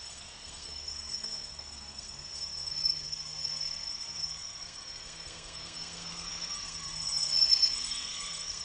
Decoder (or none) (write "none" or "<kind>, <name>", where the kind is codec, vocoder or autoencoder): codec, SNAC